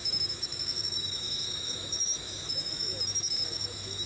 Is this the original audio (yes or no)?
no